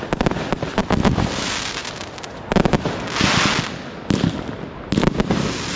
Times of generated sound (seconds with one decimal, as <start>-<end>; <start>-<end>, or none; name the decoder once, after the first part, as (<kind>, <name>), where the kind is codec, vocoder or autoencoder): none